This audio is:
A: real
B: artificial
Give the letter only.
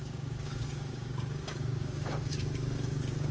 B